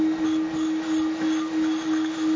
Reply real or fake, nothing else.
real